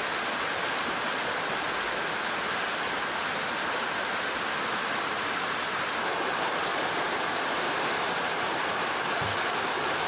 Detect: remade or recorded recorded